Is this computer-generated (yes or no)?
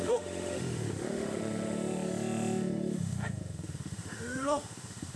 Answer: yes